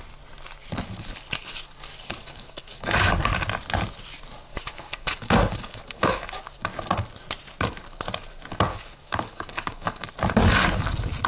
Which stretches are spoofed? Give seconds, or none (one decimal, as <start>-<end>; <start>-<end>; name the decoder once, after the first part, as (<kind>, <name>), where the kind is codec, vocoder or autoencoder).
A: 1.9-3.1 (codec, DAC); 4.5-6.4; 8.7-10.1